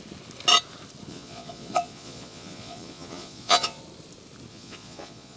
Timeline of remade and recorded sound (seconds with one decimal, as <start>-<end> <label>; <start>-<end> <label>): 0.0-1.1 recorded; 1.1-3.8 remade; 3.8-4.5 recorded; 4.5-5.4 remade